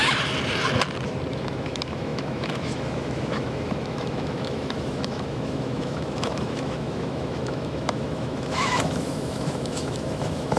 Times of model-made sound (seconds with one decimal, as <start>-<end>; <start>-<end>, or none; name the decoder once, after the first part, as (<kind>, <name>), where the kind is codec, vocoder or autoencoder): 1.3-10.6 (autoencoder, DAC-VAE)